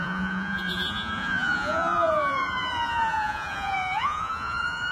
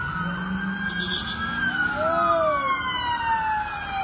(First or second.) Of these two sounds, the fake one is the first